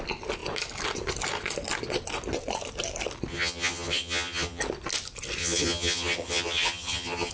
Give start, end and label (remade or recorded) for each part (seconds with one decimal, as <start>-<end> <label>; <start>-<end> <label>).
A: 0.0-3.3 recorded; 3.3-4.6 remade; 4.6-5.4 recorded; 5.4-7.3 remade